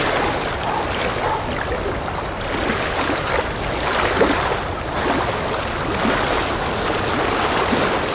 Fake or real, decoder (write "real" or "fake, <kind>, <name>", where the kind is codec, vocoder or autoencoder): real